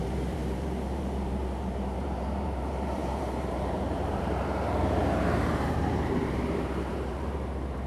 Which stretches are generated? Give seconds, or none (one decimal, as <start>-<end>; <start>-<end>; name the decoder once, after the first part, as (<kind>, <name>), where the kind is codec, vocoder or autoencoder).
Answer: 0.0-7.9 (vocoder, BigVGAN v2)

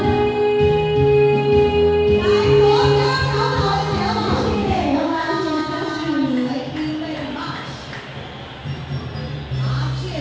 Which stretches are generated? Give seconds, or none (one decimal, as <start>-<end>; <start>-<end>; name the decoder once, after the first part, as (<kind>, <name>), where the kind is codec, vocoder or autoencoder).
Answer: 4.6-6.7 (codec, DAC)

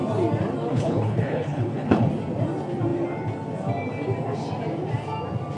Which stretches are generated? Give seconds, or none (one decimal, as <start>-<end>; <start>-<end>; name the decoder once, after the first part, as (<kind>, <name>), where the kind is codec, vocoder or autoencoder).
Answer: 0.7-2.1 (codec, HILCodec)